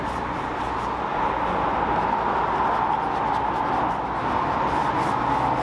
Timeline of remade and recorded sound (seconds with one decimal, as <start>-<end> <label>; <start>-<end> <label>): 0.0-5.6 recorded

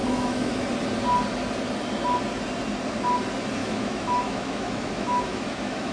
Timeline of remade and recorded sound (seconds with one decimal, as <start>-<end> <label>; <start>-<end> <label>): 0.0-0.7 remade; 0.7-3.6 recorded; 3.6-5.9 remade

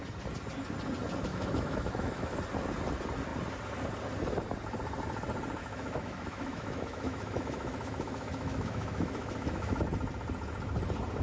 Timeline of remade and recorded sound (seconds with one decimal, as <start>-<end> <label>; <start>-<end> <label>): 0.0-1.3 recorded; 1.3-2.4 remade; 2.4-5.6 recorded; 5.6-9.8 remade; 9.8-11.2 recorded